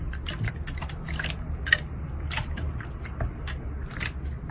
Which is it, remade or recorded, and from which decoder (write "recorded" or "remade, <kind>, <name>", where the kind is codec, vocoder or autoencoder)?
recorded